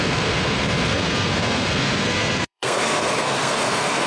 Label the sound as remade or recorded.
remade